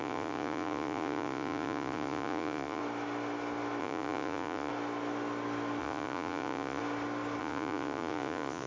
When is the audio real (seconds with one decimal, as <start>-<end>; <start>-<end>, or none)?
2.8-3.8; 4.7-5.8; 6.8-7.4